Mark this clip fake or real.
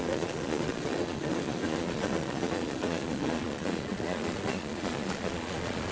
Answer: fake